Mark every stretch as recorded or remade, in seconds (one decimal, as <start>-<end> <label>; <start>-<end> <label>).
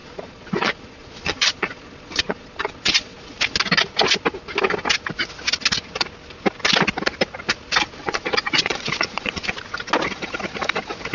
0.0-3.4 remade; 3.4-8.0 recorded; 8.0-9.6 remade; 9.6-11.1 recorded